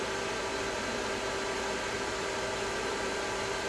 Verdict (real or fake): fake